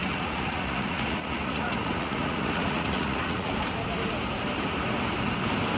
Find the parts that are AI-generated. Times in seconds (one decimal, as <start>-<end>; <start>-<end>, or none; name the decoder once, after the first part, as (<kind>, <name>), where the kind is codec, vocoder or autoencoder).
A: 0.0-3.5 (vocoder, Vocos)